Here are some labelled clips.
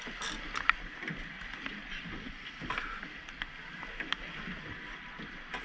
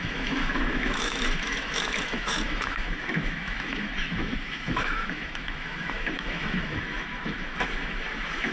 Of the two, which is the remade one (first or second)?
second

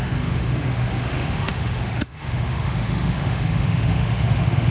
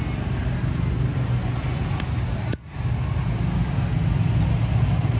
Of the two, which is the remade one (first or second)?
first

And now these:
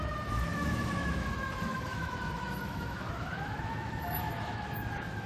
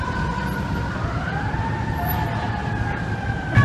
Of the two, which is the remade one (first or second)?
first